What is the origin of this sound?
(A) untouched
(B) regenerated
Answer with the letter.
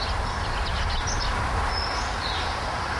A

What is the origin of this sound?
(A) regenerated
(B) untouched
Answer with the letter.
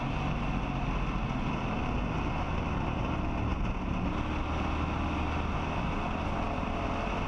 B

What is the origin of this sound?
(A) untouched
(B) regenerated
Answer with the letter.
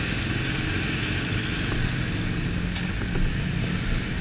A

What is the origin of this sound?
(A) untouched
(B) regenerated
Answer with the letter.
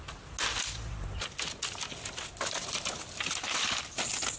A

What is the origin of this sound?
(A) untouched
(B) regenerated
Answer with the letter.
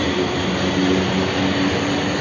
A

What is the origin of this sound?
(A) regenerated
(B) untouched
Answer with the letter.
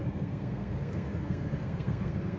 A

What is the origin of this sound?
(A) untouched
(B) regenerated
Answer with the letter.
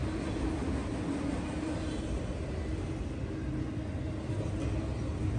A